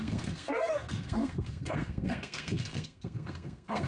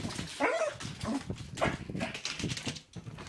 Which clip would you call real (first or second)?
second